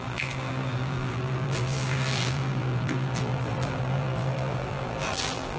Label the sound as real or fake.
fake